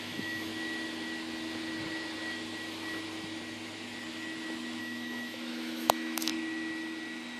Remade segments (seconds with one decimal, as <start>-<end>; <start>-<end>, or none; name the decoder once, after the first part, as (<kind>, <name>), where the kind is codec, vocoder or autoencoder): 0.0-0.5 (autoencoder, DAC-VAE); 4.8-6.3